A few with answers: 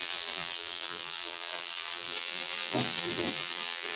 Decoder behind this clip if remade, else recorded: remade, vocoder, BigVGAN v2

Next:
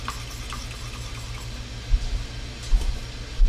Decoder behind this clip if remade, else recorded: recorded